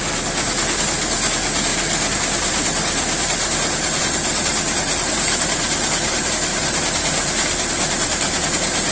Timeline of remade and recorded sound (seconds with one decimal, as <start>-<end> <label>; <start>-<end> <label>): 0.0-8.9 recorded